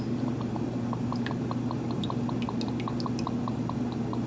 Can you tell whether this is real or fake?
real